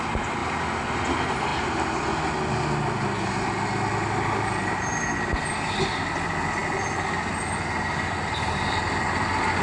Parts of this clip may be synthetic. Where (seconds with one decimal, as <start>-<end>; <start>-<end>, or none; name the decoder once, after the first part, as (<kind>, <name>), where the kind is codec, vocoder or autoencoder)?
none